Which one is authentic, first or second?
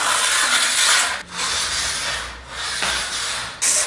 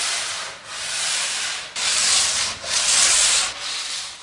first